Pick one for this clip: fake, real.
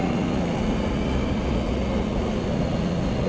fake